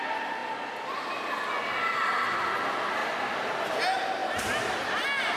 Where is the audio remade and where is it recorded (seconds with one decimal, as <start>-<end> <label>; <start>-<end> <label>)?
0.0-5.4 recorded